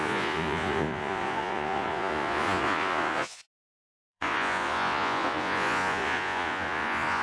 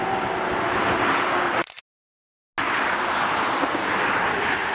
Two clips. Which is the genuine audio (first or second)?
second